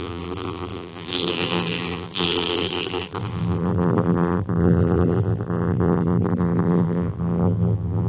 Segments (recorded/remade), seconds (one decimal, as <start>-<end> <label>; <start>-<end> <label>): 0.0-8.1 remade